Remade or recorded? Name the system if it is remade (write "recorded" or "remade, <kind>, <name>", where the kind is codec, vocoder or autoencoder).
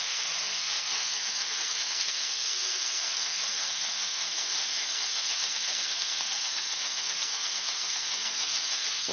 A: remade, codec, SNAC